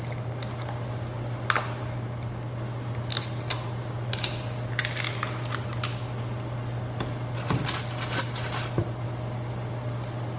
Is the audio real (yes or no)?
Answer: yes